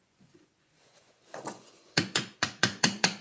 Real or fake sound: fake